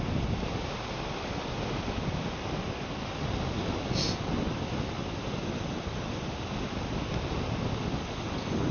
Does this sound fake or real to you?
real